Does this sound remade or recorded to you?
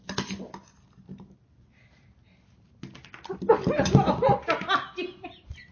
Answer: recorded